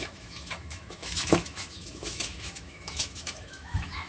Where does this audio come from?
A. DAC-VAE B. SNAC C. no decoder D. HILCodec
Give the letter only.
A